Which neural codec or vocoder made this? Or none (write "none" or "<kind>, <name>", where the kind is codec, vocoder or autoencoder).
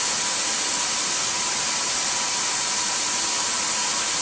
none